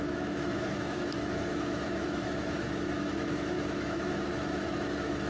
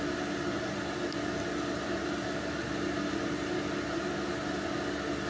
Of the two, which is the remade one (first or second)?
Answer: first